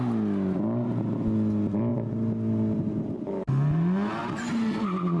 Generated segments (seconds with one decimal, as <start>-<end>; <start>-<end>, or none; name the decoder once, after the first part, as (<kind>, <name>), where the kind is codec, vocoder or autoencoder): 4.2-4.8 (vocoder, BigVGAN v2)